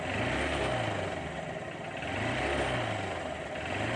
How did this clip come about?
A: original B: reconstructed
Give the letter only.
A